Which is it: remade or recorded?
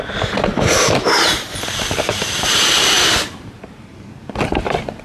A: remade